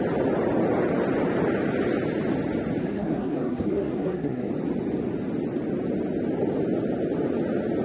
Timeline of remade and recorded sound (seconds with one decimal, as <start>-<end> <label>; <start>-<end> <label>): 0.0-2.8 recorded; 2.8-4.5 remade; 4.5-7.8 recorded